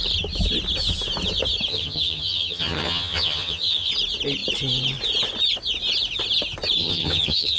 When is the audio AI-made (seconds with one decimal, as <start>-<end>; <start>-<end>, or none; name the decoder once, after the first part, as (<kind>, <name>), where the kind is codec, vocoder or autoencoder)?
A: 1.7-3.9 (vocoder, HiFi-GAN); 6.8-7.6